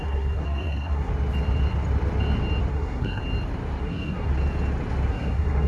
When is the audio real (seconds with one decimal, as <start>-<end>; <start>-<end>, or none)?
1.1-2.7; 3.2-3.8; 4.3-5.1